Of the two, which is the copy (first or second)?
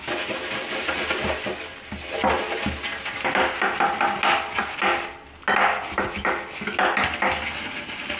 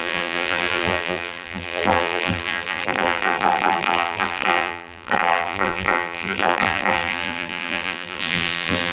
second